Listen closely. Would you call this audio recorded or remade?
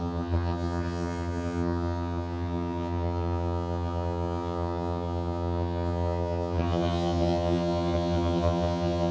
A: remade